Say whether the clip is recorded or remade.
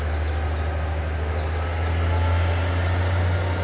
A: recorded